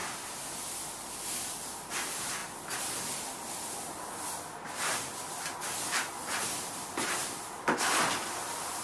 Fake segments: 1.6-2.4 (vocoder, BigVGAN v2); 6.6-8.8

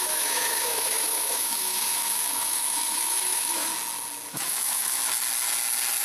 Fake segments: 0.0-3.7 (autoencoder, DAC-VAE); 4.3-5.0

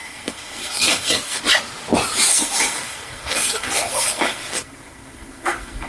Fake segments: 0.0-1.4 (codec, SNAC); 2.3-5.9